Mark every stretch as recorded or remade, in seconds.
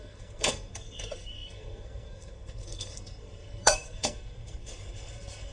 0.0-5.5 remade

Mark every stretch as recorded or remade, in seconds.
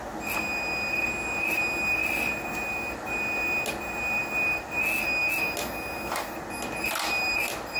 0.0-7.8 recorded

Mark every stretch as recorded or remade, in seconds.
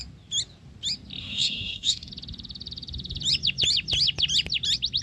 0.0-1.2 recorded; 1.2-2.1 remade; 2.1-5.0 recorded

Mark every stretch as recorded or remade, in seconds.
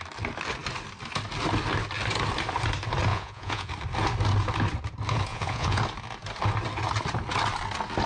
0.0-3.1 recorded; 3.1-3.7 remade; 3.7-5.3 recorded; 5.3-5.8 remade; 5.8-8.1 recorded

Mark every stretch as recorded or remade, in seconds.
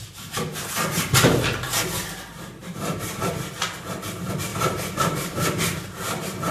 0.0-2.6 recorded; 2.6-3.5 remade; 3.5-4.5 recorded; 4.5-5.8 remade; 5.8-6.5 recorded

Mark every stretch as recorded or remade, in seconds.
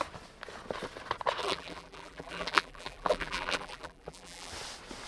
0.0-1.4 recorded; 1.4-4.5 remade; 4.5-5.1 recorded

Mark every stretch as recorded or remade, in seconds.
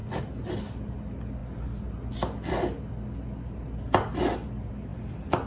0.0-5.5 recorded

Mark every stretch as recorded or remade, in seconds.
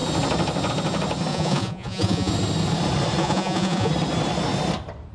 0.0-1.3 recorded; 1.3-2.3 remade; 2.3-3.2 recorded; 3.2-3.9 remade; 3.9-5.1 recorded